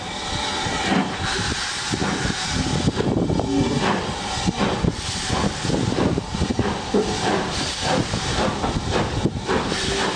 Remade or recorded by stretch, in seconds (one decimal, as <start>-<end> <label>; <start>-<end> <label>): 0.0-2.0 remade; 2.0-5.9 recorded; 5.9-10.2 remade